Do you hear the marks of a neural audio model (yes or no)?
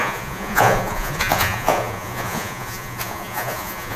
yes